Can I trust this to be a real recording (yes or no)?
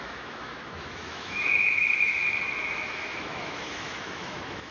no